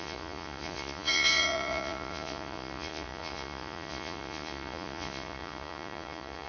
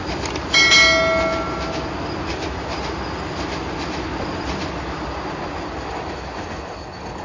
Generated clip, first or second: first